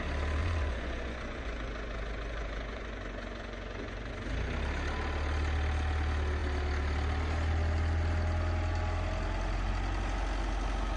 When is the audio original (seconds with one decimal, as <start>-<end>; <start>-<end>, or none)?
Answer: 0.0-0.4; 4.1-11.0